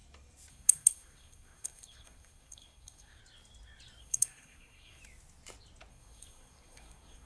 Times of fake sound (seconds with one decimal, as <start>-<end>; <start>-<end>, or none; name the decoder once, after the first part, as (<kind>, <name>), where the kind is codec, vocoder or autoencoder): 0.5-3.2 (codec, SNAC); 4.0-5.0; 5.9-7.3